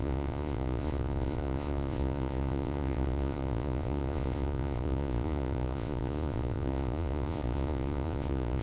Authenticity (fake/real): fake